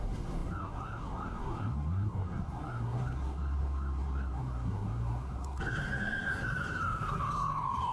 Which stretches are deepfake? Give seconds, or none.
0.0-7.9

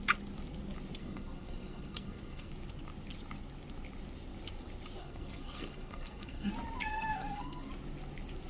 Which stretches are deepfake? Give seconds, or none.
1.0-2.5; 5.0-6.5; 6.9-7.7